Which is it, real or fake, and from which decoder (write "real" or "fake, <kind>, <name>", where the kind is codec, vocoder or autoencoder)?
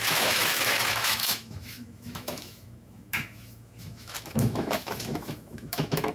fake, autoencoder, DAC-VAE